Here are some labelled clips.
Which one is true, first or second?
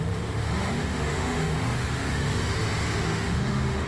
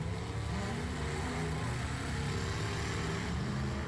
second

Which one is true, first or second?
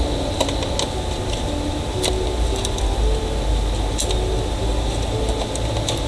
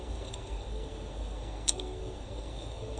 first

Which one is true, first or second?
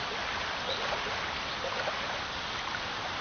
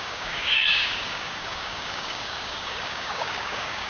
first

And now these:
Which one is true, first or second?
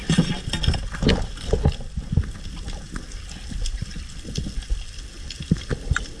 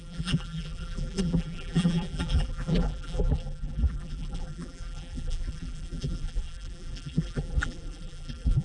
first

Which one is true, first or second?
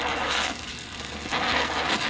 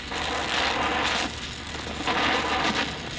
second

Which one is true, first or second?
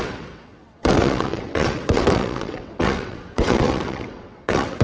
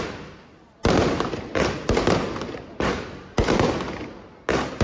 second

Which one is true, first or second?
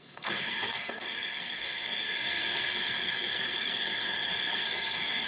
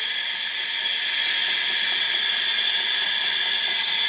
second